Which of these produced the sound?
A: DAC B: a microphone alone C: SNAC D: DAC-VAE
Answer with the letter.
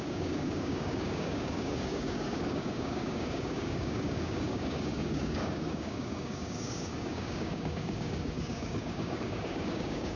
A